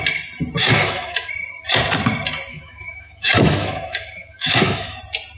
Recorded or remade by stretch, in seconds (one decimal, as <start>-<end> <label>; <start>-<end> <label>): 0.0-0.6 recorded; 0.6-1.3 remade; 1.3-2.5 recorded; 2.5-5.0 remade; 5.0-5.4 recorded

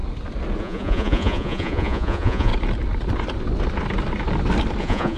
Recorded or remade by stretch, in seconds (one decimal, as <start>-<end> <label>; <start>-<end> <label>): 0.0-0.6 recorded; 0.6-2.5 remade; 2.5-4.8 recorded; 4.8-5.2 remade

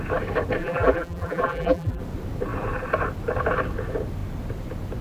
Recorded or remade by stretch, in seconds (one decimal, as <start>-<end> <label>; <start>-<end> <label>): 0.0-0.6 recorded; 0.6-2.0 remade; 2.0-5.0 recorded

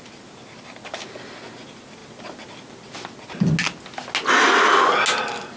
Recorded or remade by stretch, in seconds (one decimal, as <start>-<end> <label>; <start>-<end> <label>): 0.0-5.6 recorded